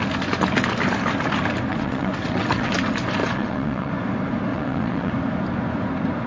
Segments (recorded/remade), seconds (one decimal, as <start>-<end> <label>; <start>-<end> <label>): 0.0-1.7 recorded; 1.7-2.7 remade; 2.7-3.2 recorded; 3.2-3.9 remade; 3.9-4.5 recorded; 4.5-5.1 remade; 5.1-6.3 recorded